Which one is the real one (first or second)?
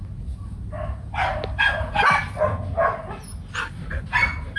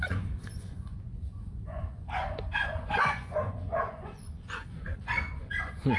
first